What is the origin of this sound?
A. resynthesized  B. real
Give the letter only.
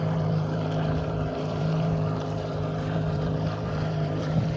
A